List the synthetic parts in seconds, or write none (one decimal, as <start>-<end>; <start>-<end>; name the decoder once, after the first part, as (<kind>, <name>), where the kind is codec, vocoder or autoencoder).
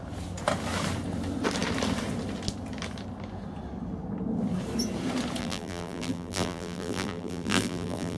5.4-8.2 (vocoder, BigVGAN v2)